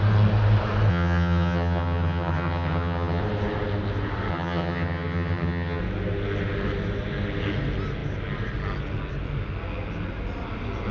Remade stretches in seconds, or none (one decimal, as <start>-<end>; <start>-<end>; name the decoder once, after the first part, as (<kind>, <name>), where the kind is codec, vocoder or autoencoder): 0.9-3.2 (vocoder, HiFi-GAN); 4.3-5.8